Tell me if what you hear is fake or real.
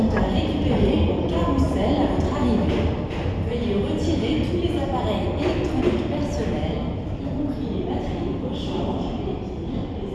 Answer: real